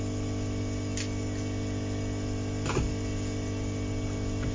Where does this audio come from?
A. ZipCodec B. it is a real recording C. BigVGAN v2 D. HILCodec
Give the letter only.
B